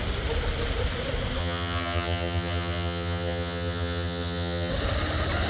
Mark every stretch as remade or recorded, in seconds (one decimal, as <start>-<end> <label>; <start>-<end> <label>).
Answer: 0.0-1.4 recorded; 1.4-4.7 remade; 4.7-5.5 recorded